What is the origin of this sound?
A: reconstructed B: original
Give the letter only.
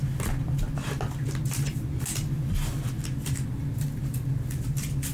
B